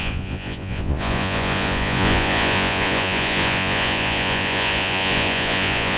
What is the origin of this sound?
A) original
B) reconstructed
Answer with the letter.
B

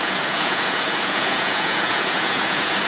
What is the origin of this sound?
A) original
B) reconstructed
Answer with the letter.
B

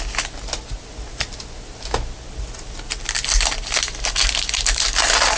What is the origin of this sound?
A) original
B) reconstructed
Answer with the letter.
A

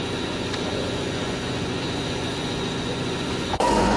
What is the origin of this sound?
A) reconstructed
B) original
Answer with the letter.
A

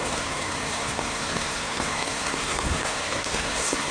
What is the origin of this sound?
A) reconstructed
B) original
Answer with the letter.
A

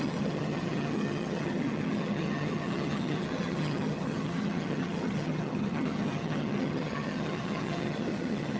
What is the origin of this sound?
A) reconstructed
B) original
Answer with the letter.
A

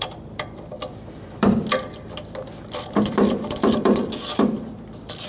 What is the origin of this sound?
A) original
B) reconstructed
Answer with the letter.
B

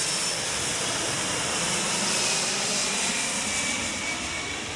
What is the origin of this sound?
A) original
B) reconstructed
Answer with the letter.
B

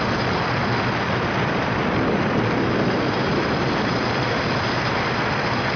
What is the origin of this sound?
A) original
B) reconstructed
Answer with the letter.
B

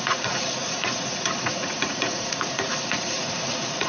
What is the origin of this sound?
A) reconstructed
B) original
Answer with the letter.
A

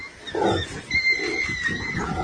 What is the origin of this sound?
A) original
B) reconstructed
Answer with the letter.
A